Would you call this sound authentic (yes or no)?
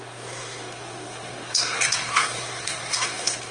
no